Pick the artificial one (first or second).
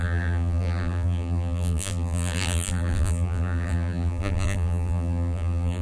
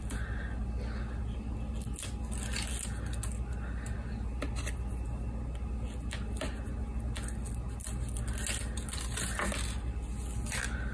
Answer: first